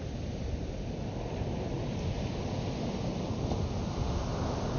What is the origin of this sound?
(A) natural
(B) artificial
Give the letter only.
A